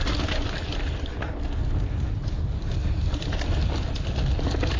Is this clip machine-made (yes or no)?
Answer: no